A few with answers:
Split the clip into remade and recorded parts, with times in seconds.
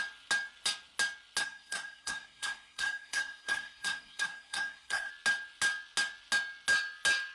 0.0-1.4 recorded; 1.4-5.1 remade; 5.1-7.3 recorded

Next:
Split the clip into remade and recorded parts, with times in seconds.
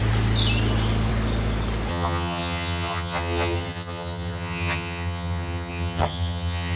0.0-1.9 recorded; 1.9-6.8 remade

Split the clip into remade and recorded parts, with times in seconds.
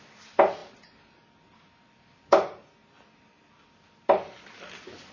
0.0-5.1 recorded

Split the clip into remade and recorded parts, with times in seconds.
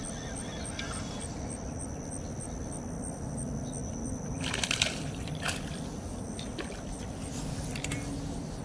0.0-3.8 recorded; 3.8-5.5 remade; 5.5-8.6 recorded